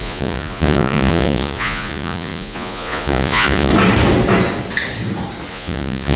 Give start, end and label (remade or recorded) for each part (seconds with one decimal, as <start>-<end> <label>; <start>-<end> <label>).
0.0-3.7 remade; 3.7-5.5 recorded; 5.5-6.2 remade